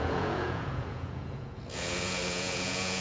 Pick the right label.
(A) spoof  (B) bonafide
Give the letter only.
A